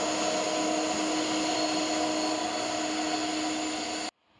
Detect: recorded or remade recorded